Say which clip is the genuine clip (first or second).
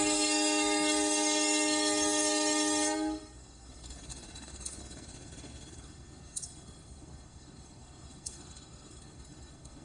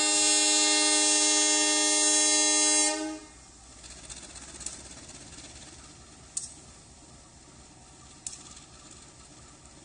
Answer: second